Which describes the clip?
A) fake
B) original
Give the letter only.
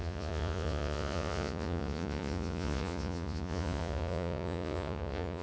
A